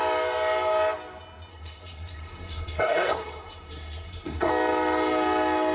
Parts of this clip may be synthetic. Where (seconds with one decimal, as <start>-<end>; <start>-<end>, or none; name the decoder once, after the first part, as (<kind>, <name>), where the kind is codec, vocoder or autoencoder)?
1.5-4.5 (codec, SNAC)